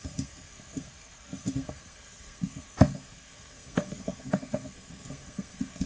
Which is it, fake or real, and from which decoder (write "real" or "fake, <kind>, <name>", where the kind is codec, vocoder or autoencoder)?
fake, codec, SNAC